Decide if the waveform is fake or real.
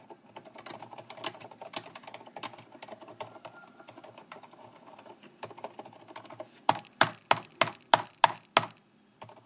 real